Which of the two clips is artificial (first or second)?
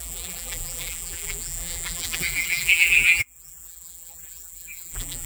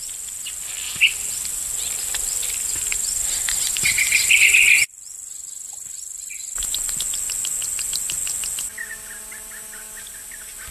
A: first